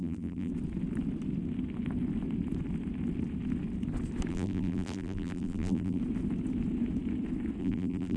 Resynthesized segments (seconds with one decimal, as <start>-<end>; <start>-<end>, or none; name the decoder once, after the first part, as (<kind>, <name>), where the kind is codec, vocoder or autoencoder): 0.0-0.5 (vocoder, BigVGAN v2); 4.3-6.0; 7.6-8.2